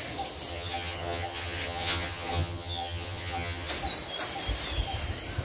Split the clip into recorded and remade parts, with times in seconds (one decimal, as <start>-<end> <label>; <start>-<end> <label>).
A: 0.0-0.5 recorded; 0.5-3.7 remade; 3.7-5.4 recorded

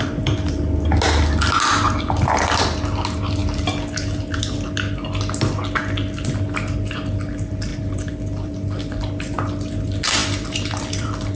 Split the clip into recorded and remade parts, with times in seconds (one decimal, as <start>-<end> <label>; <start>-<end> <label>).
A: 0.0-7.7 recorded; 7.7-8.5 remade; 8.5-10.2 recorded; 10.2-11.4 remade